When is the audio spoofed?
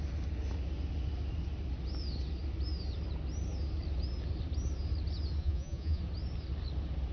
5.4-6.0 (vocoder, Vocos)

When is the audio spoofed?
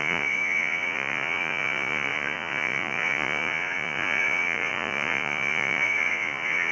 0.0-6.7 (vocoder, Vocos)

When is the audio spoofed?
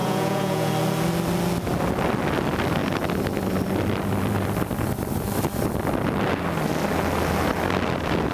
0.0-0.7 (vocoder, Vocos)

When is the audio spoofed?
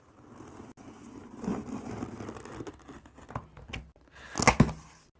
none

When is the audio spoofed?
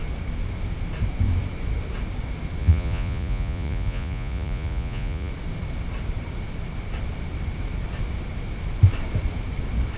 2.6-5.3 (vocoder, Vocos)